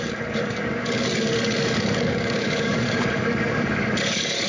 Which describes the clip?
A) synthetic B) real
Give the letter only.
A